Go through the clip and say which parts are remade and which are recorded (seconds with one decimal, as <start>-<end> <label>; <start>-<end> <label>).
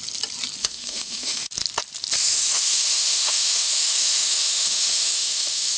0.0-0.6 recorded; 0.6-1.5 remade; 1.5-2.2 recorded; 2.2-5.8 remade